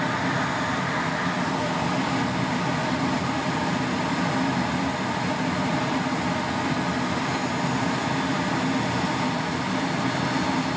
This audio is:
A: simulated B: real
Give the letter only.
B